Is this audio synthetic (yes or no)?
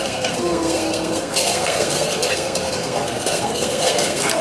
yes